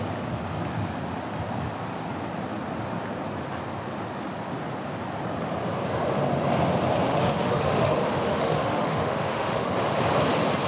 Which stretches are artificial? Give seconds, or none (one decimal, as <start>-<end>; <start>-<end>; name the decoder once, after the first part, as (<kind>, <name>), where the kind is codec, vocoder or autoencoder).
7.1-9.7 (autoencoder, DAC-VAE)